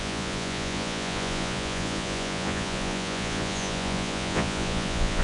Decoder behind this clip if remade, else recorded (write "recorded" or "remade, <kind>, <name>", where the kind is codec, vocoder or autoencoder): remade, vocoder, Vocos